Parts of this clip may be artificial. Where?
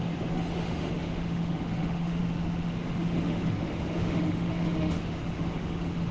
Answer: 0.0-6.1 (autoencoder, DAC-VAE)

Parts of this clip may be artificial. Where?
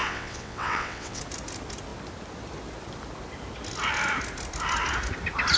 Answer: 0.0-1.2 (vocoder, WaveNeXt)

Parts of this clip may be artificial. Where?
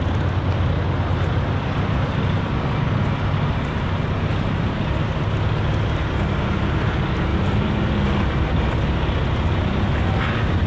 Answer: 4.3-4.8 (vocoder, BigVGAN v2); 7.3-7.9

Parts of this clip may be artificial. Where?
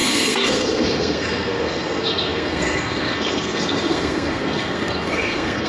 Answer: 0.0-5.7 (codec, SNAC)